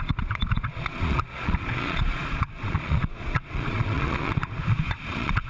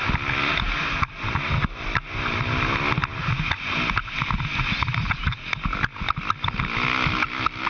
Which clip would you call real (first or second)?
second